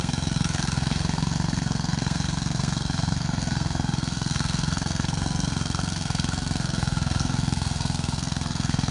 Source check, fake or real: fake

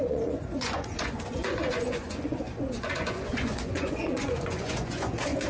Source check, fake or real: fake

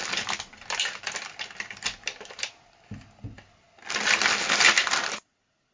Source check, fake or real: real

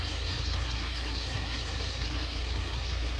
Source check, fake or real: fake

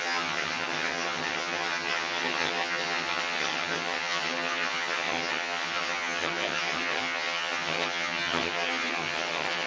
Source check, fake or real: fake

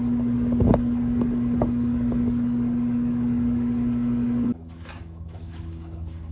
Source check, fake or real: fake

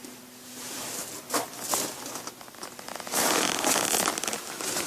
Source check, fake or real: real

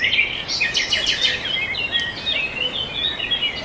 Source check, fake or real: real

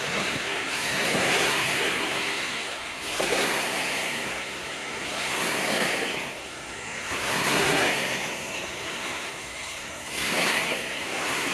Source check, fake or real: fake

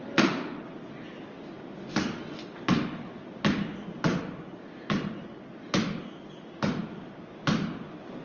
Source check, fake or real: real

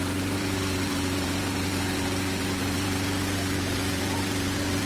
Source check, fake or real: fake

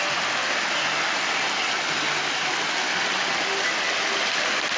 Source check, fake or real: real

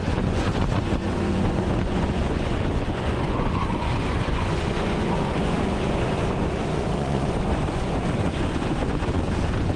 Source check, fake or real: fake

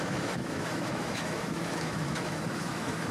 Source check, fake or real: fake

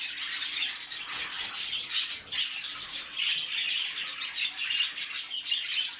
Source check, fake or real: real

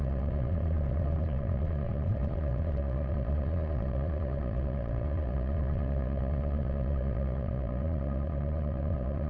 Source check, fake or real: fake